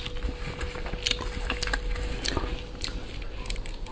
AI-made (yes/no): no